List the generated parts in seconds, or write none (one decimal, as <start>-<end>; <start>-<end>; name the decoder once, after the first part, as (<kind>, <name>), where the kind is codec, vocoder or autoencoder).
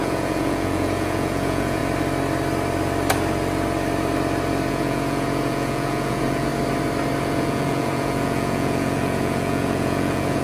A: 0.0-1.8 (vocoder, Vocos); 4.7-6.5; 7.2-10.4